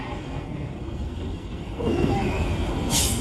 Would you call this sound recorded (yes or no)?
no